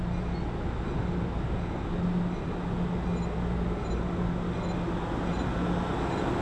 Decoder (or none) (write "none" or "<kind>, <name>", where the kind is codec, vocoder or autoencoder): none